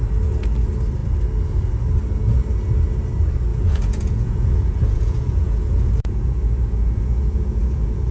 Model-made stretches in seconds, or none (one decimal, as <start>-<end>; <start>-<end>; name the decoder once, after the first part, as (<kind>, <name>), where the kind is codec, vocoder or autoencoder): 3.5-8.1 (vocoder, Vocos)